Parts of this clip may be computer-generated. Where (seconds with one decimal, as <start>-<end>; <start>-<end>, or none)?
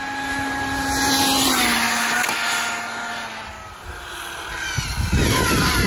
none